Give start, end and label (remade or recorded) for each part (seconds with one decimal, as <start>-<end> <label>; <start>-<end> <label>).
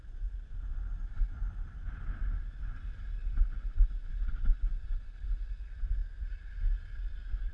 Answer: 0.0-7.5 recorded